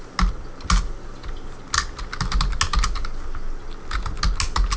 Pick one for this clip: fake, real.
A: real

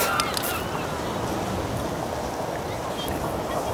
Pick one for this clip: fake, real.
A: real